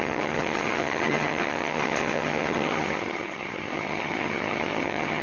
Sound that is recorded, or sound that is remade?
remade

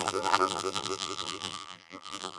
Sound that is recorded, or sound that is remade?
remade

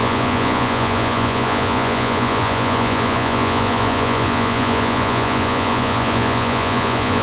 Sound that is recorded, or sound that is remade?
remade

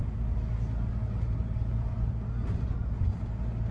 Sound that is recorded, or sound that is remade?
recorded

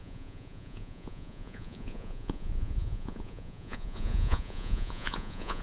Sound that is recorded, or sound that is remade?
remade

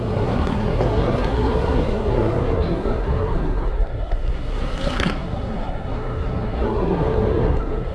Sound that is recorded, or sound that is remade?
remade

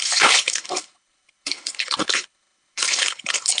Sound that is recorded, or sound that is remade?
remade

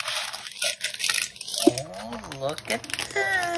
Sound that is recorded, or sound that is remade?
recorded